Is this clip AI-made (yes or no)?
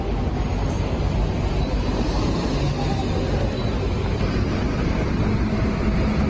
no